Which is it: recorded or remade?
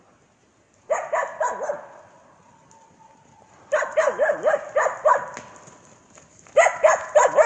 recorded